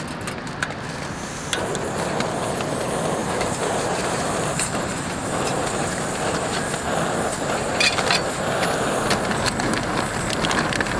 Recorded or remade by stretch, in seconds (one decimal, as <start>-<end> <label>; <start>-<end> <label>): 0.0-3.2 recorded; 3.2-5.9 remade; 5.9-11.0 recorded